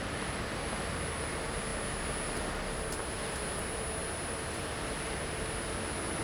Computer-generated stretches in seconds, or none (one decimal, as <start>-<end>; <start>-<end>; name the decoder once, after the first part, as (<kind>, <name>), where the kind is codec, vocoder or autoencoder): none